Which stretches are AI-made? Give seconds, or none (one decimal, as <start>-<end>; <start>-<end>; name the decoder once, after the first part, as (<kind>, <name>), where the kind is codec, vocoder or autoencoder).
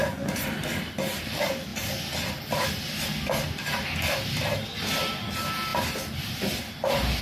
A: none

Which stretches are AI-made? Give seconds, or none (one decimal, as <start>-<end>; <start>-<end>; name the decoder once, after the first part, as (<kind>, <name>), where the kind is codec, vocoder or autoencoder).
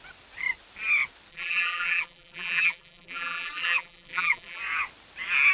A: 1.3-4.6 (vocoder, BigVGAN v2)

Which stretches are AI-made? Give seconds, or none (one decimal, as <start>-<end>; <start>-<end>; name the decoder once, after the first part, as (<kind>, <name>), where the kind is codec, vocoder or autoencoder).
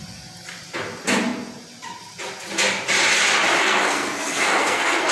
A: 3.6-5.1 (codec, SNAC)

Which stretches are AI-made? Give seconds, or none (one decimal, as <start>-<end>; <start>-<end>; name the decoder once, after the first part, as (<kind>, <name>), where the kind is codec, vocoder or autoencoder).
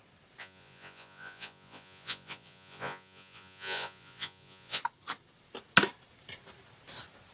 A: 0.4-4.8 (vocoder, Vocos)